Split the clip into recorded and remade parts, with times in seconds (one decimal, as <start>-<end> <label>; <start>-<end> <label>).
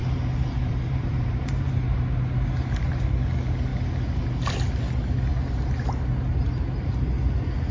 0.0-1.7 remade; 1.7-5.3 recorded; 5.3-5.8 remade; 5.8-7.7 recorded